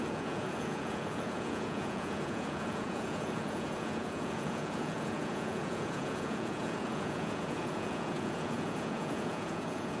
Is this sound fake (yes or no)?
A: yes